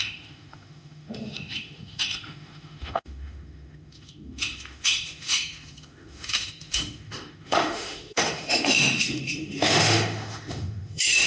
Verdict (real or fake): fake